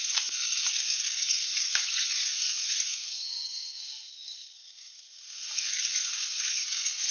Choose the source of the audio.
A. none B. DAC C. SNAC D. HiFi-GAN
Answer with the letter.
C